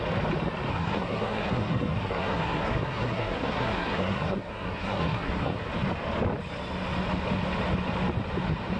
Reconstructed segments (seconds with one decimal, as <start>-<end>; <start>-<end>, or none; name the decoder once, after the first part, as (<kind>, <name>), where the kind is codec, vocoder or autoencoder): 0.7-5.7 (codec, SNAC)